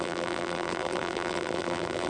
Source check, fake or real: fake